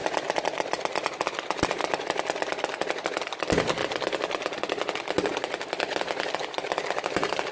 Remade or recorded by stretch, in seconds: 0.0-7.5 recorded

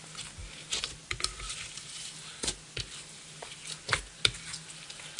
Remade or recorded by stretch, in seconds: 0.0-5.2 recorded

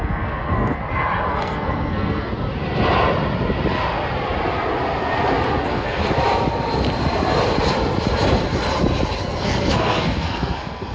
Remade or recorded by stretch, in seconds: 0.0-0.8 remade; 0.8-1.3 recorded; 1.3-2.3 remade; 2.3-5.6 recorded; 5.6-6.0 remade; 6.0-9.2 recorded; 9.2-10.9 remade

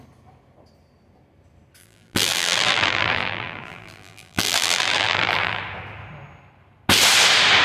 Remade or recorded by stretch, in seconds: 0.0-1.8 recorded; 1.8-5.6 remade; 5.6-7.6 recorded